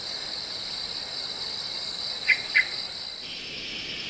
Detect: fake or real real